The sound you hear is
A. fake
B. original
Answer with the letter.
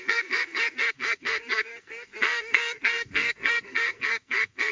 A